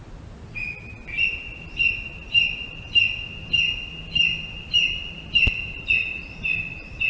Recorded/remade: recorded